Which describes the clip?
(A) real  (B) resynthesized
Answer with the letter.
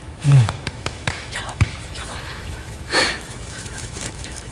B